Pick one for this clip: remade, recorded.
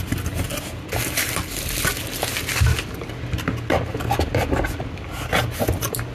recorded